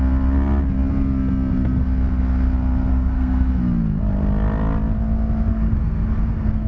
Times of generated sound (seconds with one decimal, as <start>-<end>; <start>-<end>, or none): 2.9-3.5; 5.5-6.7